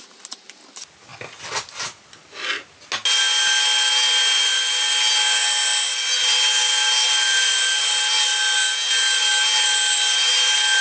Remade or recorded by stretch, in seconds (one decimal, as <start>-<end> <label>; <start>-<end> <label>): 0.0-10.8 recorded